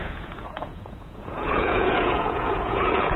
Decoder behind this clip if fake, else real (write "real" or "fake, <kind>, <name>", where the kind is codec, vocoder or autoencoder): fake, vocoder, Vocos